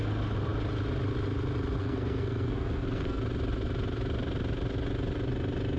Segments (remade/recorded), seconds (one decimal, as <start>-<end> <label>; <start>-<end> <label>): 0.0-1.8 recorded; 1.8-3.2 remade; 3.2-5.8 recorded